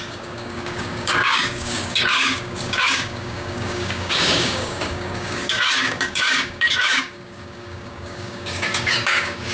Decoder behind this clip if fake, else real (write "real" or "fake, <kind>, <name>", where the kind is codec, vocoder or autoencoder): fake, codec, DAC